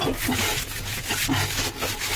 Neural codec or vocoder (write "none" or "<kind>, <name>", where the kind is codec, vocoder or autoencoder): none